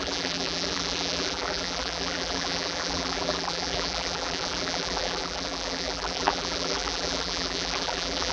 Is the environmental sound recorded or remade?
remade